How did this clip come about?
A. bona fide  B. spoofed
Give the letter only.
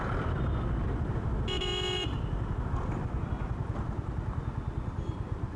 A